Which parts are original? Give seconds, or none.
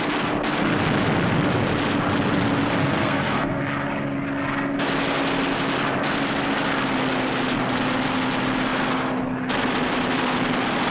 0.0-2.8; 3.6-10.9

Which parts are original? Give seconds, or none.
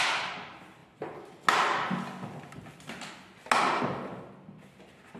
0.0-5.2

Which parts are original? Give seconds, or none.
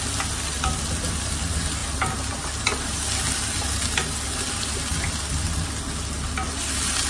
0.0-7.1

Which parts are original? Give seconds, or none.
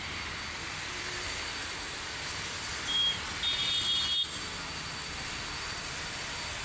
0.0-6.6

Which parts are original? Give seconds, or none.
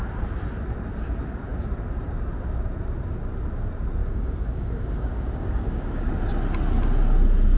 0.0-4.0; 6.1-7.6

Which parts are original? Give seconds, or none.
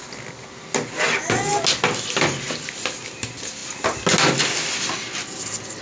0.0-5.8